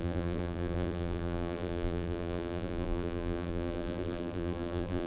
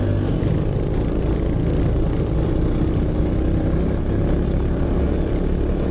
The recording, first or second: second